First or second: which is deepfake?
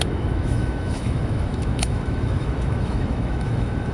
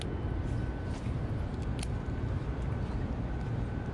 first